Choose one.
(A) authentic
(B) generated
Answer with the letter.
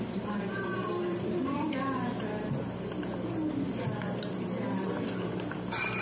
A